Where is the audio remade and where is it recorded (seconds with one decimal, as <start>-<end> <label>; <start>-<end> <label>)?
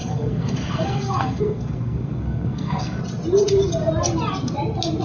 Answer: 0.0-3.0 remade; 3.0-5.0 recorded